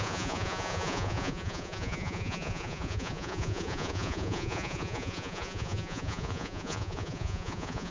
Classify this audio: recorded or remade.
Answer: remade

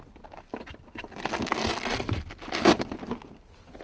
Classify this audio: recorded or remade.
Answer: recorded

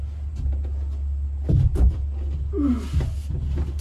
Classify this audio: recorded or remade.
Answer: recorded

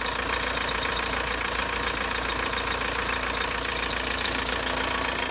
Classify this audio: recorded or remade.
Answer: recorded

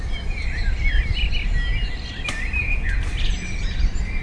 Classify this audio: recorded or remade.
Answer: recorded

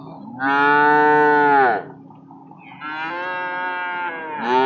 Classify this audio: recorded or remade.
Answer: recorded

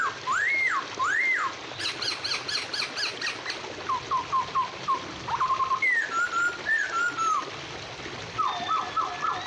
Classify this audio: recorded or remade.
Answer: recorded